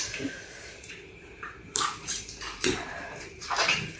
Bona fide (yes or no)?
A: no